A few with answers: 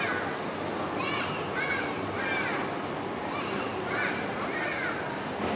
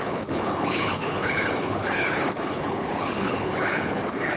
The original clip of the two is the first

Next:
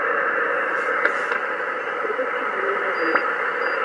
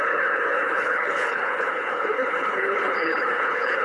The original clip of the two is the first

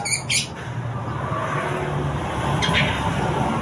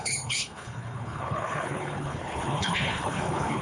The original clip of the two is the first